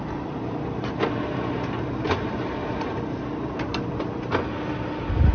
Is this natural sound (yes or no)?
yes